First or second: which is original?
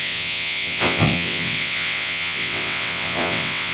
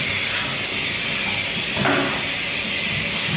second